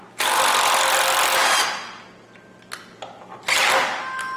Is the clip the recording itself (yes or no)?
yes